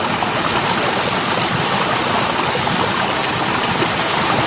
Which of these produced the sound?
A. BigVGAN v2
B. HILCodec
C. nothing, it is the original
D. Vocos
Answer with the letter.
C